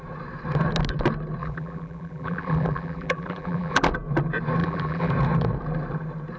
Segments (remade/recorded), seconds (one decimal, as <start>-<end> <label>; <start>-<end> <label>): 0.0-1.4 recorded; 1.4-3.9 remade; 3.9-4.6 recorded; 4.6-5.1 remade; 5.1-6.4 recorded